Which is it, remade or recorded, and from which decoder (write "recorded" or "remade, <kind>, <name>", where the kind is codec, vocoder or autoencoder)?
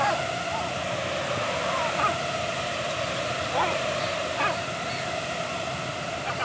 recorded